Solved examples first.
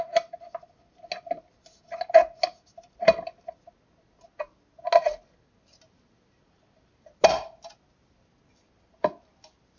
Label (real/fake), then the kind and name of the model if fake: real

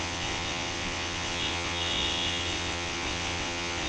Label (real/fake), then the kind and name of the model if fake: fake, vocoder, WaveNeXt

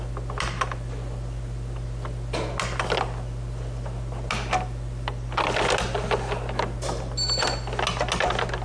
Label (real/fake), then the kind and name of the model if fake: real